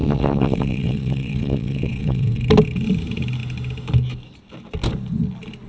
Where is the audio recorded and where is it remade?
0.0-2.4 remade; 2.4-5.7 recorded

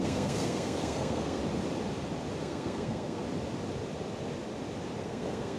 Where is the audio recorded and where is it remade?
0.0-1.4 remade; 1.4-2.4 recorded; 2.4-3.2 remade; 3.2-5.0 recorded; 5.0-5.6 remade